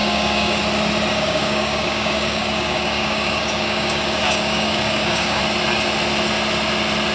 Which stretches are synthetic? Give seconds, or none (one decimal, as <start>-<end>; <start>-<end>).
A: 0.0-0.6; 1.1-5.4